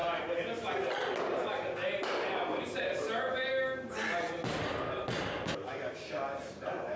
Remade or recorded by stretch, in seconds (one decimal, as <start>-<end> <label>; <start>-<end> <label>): 0.0-2.6 recorded; 2.6-3.5 remade; 3.5-6.4 recorded; 6.4-7.0 remade